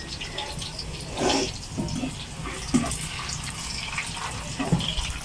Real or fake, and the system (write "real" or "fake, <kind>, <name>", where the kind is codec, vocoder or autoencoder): real